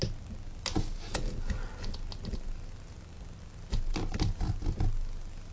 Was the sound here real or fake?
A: real